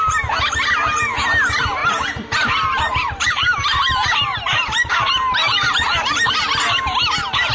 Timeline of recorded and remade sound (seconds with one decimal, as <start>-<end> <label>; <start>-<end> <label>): 0.0-1.8 recorded; 1.8-6.3 remade; 6.3-7.5 recorded